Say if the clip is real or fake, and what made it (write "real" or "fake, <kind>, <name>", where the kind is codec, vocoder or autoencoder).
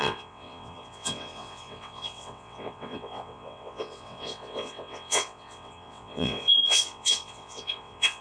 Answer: fake, vocoder, WaveNeXt